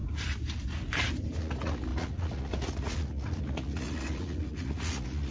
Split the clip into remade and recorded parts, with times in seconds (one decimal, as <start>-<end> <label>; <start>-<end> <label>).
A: 0.0-1.4 recorded; 1.4-5.3 remade